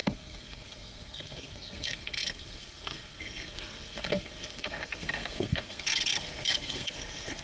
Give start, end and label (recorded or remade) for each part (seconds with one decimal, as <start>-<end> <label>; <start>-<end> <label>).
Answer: 0.0-7.4 remade